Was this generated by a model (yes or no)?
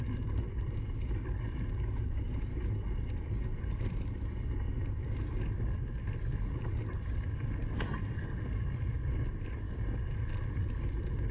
no